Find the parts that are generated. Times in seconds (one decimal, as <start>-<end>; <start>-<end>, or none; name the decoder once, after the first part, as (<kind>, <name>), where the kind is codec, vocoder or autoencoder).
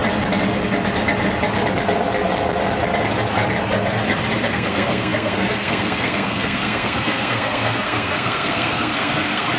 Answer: 4.5-9.6 (codec, SNAC)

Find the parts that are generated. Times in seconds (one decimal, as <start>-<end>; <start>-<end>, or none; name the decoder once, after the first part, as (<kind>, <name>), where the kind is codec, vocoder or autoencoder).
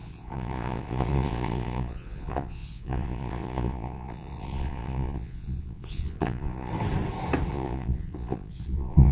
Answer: 0.0-6.7 (vocoder, Vocos); 7.5-9.1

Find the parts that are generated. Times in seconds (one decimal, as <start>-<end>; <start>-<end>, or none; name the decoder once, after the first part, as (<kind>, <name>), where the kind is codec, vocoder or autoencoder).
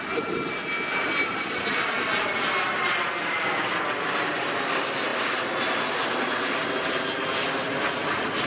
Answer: none